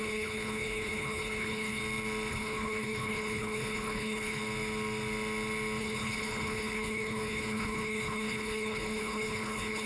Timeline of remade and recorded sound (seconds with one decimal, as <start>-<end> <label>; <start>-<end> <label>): 0.0-1.8 remade; 1.8-2.3 recorded; 2.3-4.4 remade; 4.4-5.8 recorded; 5.8-9.9 remade